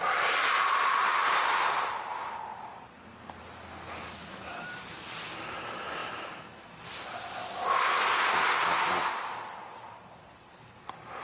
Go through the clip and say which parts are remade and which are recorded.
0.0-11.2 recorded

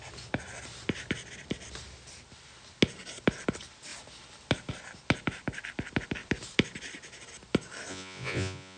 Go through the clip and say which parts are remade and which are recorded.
0.0-7.9 recorded; 7.9-8.8 remade

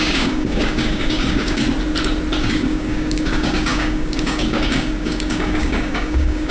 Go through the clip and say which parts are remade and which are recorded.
0.0-1.6 remade; 1.6-2.4 recorded; 2.4-6.5 remade

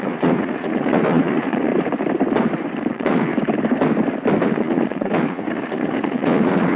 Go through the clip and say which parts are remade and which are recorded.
0.0-1.7 remade; 1.7-2.9 recorded; 2.9-3.3 remade; 3.3-4.4 recorded; 4.4-6.8 remade